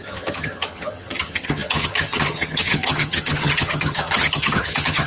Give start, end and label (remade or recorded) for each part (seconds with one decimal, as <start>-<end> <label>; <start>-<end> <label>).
0.0-5.1 remade